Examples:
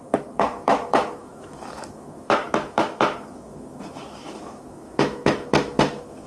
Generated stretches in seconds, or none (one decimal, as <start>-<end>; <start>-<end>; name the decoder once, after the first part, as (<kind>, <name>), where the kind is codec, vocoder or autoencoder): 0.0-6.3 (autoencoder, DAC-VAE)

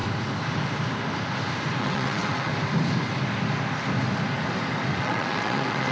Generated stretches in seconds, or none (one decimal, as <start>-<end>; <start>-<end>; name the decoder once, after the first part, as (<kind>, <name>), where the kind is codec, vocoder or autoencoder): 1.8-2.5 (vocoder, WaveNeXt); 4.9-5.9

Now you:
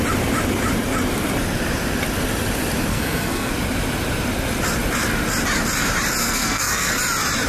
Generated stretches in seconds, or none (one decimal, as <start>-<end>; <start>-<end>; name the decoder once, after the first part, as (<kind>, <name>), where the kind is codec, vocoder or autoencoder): 2.9-3.5 (codec, SNAC); 6.2-7.0

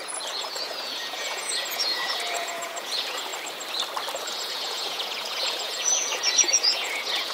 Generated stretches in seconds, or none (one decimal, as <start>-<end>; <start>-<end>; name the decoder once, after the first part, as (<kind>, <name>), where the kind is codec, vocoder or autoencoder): 0.0-3.3 (vocoder, Vocos); 4.2-7.3